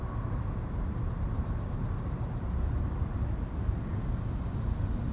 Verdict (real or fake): real